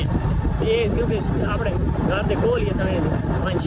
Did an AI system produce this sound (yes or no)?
no